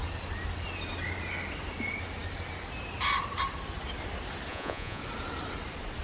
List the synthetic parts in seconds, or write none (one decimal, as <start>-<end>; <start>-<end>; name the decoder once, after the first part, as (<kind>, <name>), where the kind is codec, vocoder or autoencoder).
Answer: 4.5-5.0 (vocoder, Vocos)